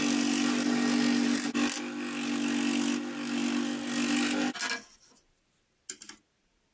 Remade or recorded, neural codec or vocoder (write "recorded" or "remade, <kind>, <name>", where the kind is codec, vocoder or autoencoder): recorded